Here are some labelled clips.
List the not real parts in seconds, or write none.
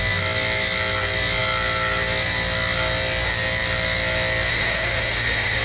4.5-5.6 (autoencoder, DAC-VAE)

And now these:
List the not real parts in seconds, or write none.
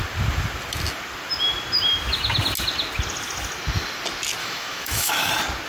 4.4-5.3 (autoencoder, DAC-VAE)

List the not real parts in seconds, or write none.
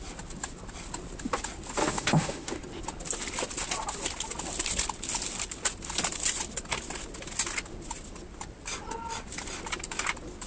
1.8-2.6 (autoencoder, DAC-VAE)